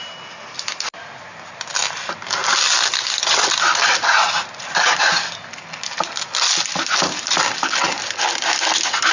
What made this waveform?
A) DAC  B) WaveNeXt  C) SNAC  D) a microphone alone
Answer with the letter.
D